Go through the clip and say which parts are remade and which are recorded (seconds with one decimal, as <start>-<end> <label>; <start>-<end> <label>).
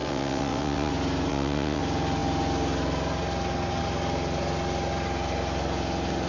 0.0-0.9 remade; 0.9-1.3 recorded; 1.3-1.8 remade; 1.8-6.3 recorded